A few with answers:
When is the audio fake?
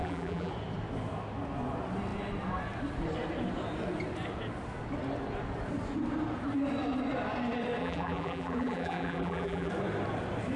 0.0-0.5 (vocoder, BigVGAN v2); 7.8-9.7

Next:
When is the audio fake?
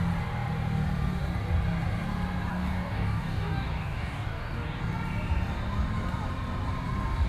2.5-4.8 (codec, DAC)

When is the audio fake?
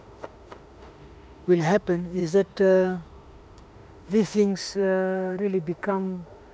0.0-6.5 (autoencoder, DAC-VAE)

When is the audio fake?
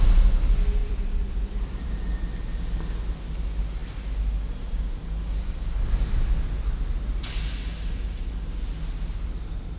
0.8-1.3 (vocoder, BigVGAN v2)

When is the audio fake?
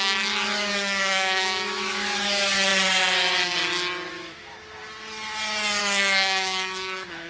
0.0-2.7 (autoencoder, DAC-VAE); 4.1-4.8; 5.8-7.3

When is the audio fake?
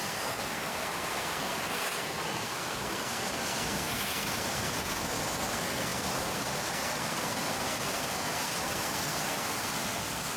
0.0-10.4 (codec, SNAC)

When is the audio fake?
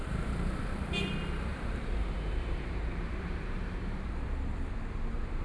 0.0-0.7 (vocoder, BigVGAN v2); 1.5-4.7